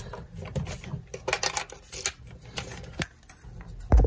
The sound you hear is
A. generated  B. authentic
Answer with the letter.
B